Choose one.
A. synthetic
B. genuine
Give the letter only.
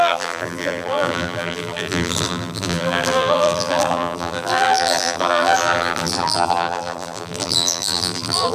A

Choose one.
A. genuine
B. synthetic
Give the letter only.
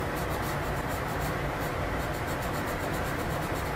B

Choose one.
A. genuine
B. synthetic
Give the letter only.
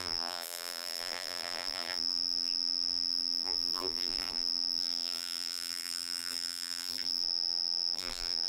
B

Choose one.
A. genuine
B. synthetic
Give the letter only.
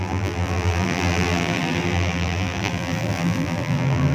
B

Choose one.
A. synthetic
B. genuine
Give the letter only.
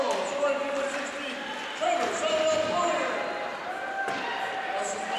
B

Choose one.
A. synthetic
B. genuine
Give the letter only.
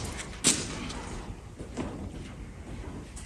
B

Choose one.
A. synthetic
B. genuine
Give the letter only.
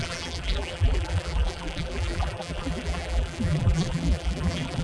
A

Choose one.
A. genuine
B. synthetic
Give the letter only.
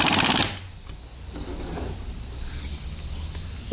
A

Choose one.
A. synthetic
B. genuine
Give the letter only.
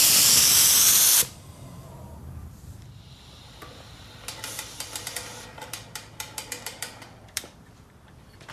A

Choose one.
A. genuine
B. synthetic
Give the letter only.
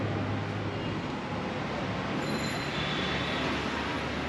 A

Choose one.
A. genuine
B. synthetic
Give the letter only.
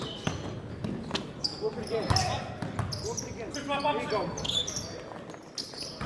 A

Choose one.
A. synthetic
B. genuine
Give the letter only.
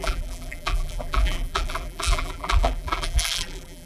A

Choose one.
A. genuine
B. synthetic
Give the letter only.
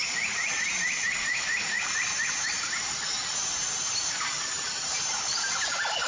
B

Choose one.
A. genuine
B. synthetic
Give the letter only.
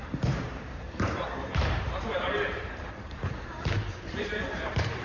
B